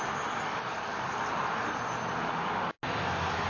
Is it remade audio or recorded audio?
recorded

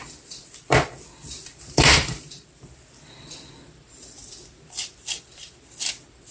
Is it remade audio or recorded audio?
remade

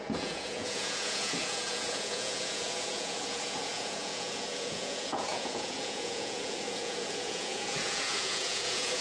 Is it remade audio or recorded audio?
remade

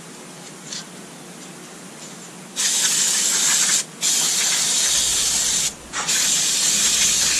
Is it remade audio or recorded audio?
recorded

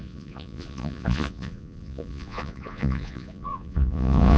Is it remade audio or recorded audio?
remade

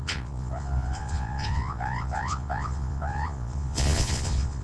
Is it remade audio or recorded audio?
remade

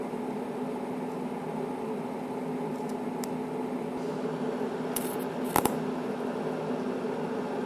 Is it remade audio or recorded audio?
recorded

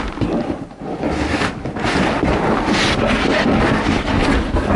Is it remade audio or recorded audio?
recorded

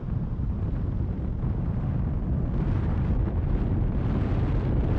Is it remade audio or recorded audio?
recorded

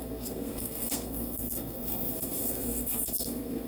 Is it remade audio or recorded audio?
remade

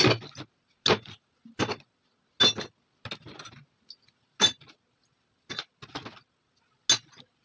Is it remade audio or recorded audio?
recorded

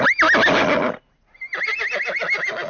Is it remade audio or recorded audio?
recorded